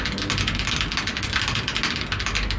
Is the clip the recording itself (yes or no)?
yes